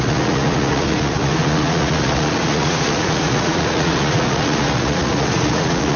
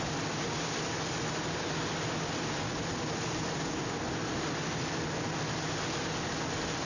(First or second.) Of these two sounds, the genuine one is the second